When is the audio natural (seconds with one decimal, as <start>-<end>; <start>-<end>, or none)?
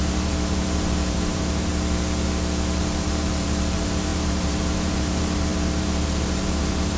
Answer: 1.7-2.8